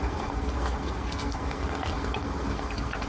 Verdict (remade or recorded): remade